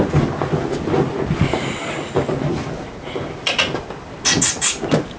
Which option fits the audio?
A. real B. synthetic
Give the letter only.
A